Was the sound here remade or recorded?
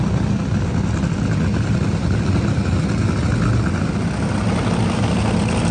recorded